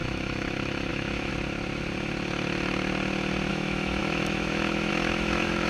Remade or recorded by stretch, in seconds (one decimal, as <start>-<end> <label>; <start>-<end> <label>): 0.0-1.3 remade; 1.3-3.5 recorded; 3.5-5.7 remade